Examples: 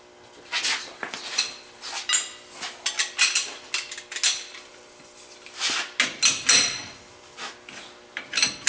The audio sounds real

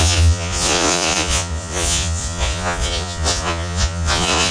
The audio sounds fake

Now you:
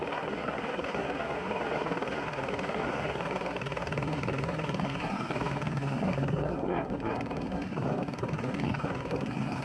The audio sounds fake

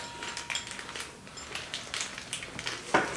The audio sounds real